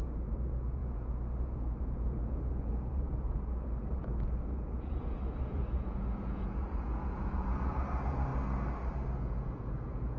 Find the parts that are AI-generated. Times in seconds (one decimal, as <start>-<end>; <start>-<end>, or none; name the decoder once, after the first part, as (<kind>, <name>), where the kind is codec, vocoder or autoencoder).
0.0-8.3 (vocoder, Vocos); 9.2-10.2